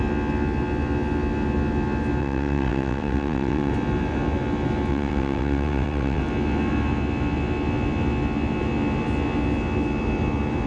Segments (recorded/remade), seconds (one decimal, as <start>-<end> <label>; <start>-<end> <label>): 0.0-2.2 recorded; 2.2-3.7 remade; 3.7-4.9 recorded; 4.9-6.2 remade; 6.2-10.7 recorded